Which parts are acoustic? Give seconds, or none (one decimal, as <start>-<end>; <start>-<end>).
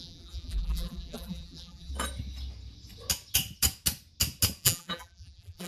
1.9-4.6